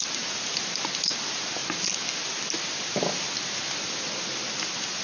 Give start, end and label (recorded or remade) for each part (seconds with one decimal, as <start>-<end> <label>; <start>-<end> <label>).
0.0-5.0 recorded